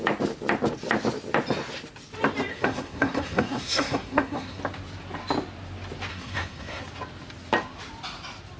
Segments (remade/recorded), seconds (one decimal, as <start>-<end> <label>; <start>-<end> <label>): 0.0-2.5 recorded; 2.5-4.6 remade; 4.6-6.1 recorded; 6.1-6.8 remade; 6.8-8.6 recorded